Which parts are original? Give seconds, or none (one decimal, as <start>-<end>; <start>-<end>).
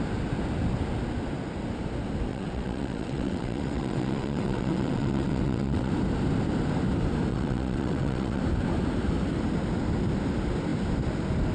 0.0-2.3; 5.9-7.3; 8.4-11.5